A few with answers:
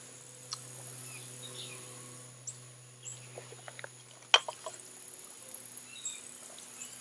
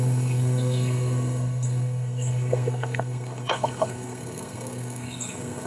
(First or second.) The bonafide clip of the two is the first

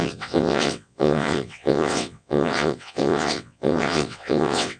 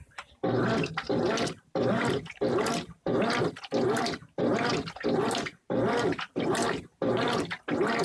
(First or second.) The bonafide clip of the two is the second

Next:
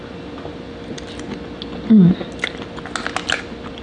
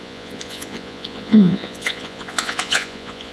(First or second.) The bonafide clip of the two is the first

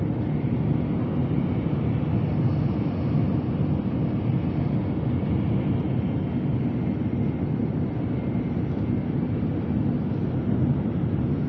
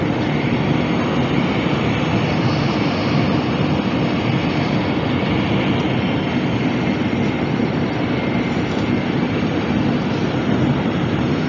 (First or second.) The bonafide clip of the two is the first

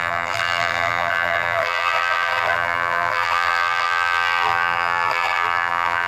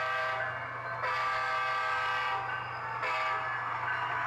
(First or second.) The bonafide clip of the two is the second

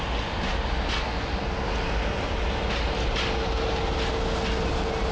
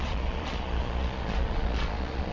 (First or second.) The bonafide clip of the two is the first